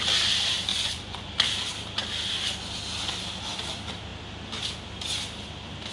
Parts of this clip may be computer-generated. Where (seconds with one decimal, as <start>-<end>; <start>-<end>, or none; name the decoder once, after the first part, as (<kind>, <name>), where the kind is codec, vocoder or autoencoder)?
0.7-1.3 (vocoder, Vocos)